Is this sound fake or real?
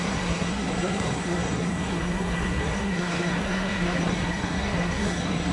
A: fake